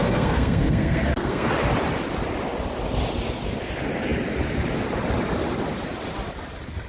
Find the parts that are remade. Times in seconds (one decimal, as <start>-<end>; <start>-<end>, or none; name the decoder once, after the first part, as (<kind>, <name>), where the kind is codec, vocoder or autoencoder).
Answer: 0.0-1.5 (codec, SNAC)